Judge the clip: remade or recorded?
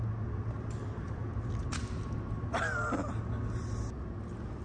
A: recorded